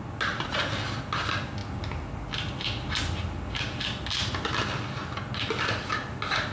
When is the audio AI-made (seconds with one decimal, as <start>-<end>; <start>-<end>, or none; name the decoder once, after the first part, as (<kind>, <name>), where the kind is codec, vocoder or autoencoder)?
none